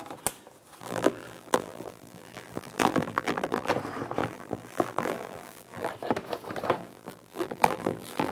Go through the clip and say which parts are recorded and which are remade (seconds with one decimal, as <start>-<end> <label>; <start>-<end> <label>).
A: 0.0-0.8 recorded; 0.8-3.7 remade; 3.7-4.2 recorded; 4.2-5.9 remade; 5.9-6.8 recorded; 6.8-8.3 remade